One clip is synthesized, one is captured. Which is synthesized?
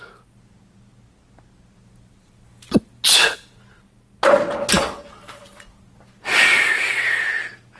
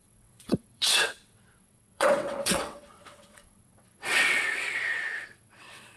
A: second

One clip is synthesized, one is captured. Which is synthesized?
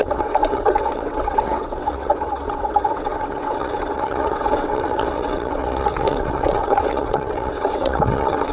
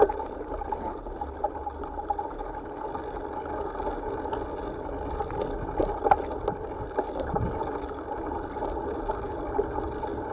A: first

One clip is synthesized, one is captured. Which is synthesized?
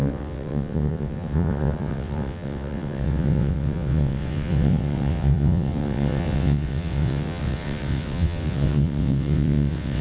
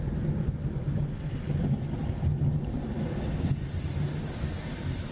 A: first